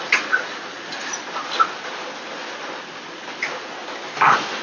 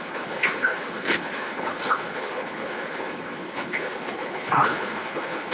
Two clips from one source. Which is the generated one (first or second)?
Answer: second